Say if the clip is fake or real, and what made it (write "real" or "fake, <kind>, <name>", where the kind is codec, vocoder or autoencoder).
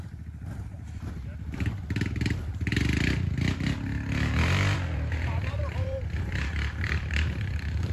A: fake, vocoder, BigVGAN v2